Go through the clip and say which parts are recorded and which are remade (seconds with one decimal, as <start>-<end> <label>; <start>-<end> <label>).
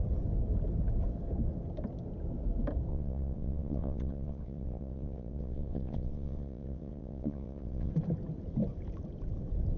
0.0-2.9 recorded; 2.9-7.9 remade; 7.9-9.8 recorded